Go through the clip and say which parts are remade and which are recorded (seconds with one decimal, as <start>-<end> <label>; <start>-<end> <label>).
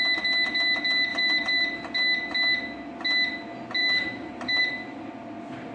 0.0-1.1 recorded; 1.1-1.6 remade; 1.6-3.8 recorded; 3.8-4.6 remade; 4.6-5.7 recorded